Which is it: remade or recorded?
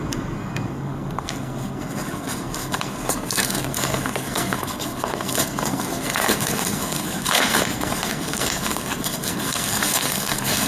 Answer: remade